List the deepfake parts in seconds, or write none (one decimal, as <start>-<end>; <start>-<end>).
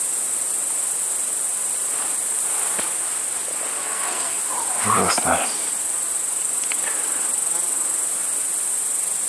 3.8-4.4